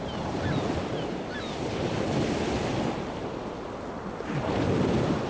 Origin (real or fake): real